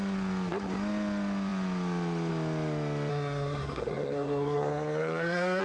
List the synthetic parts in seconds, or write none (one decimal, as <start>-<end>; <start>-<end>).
3.1-5.6